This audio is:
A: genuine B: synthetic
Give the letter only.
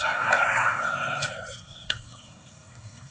B